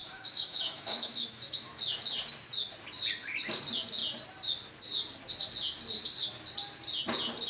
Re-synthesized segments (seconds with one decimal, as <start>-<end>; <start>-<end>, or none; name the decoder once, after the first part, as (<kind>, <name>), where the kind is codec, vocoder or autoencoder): 0.0-1.8 (autoencoder, DAC-VAE)